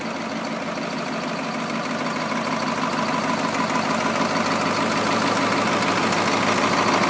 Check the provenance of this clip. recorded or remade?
recorded